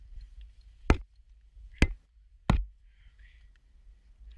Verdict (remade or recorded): recorded